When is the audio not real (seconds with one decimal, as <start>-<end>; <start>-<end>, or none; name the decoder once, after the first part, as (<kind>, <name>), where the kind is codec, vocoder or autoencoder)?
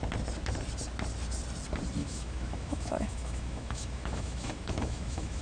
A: 2.0-5.4 (autoencoder, DAC-VAE)